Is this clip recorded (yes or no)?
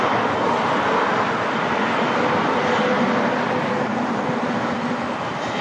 yes